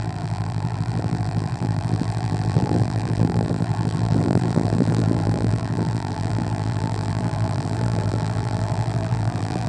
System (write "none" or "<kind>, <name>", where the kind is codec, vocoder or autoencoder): vocoder, BigVGAN v2